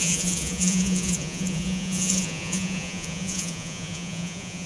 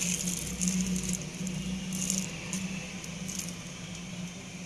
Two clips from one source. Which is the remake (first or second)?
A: first